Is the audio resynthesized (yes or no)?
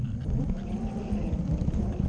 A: no